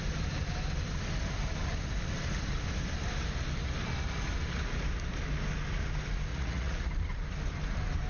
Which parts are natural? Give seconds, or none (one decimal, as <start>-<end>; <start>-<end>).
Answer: 0.0-6.3; 6.9-8.1